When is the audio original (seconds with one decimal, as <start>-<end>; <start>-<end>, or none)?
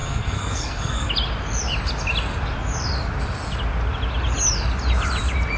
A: 1.1-5.6